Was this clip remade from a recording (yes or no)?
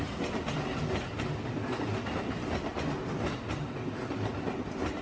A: no